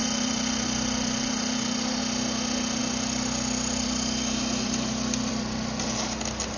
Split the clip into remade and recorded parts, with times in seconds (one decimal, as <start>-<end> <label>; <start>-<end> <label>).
0.0-2.0 remade; 2.0-2.8 recorded; 2.8-6.6 remade